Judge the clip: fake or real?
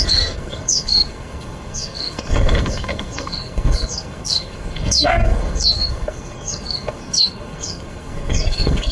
fake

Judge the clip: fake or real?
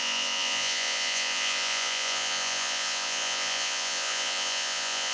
fake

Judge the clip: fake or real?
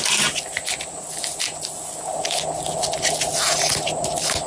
real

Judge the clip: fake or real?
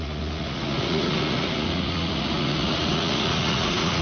fake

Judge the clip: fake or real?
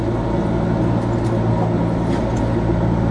real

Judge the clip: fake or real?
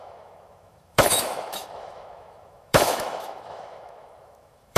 fake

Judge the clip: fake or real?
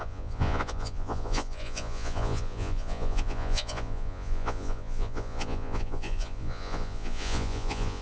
fake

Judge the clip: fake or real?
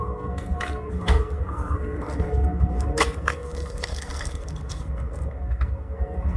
fake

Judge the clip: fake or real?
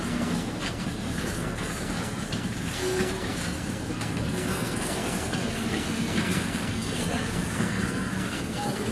fake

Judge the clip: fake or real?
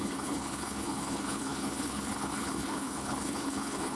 fake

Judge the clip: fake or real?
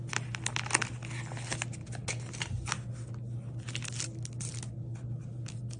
real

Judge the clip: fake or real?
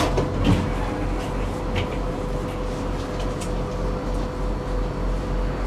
real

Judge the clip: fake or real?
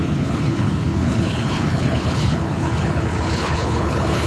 fake